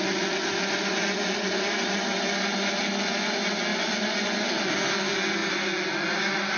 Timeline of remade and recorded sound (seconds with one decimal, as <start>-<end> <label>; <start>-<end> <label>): 0.0-6.6 recorded